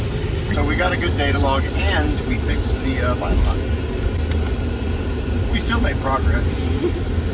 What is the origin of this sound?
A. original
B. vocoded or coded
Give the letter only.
A